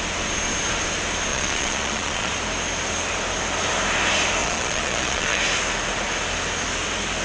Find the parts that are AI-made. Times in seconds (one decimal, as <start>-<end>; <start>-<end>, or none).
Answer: 1.3-2.3; 4.4-5.4